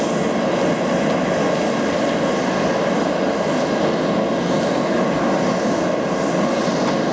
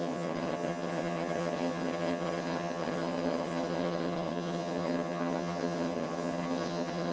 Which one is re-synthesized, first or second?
second